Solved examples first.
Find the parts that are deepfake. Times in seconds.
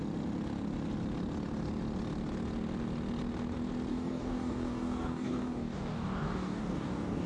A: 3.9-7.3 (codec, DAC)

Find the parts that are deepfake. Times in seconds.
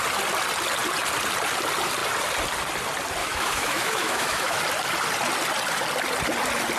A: 3.2-4.6 (autoencoder, DAC-VAE)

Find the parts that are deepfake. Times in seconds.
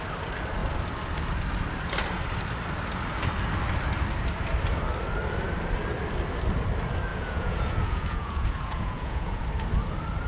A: 7.1-9.4 (vocoder, Vocos)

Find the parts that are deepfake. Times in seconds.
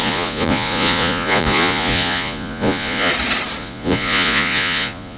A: 0.0-3.1 (vocoder, Vocos); 3.6-5.2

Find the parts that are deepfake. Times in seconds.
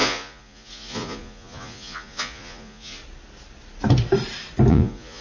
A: 0.0-3.0 (vocoder, Vocos); 4.7-5.2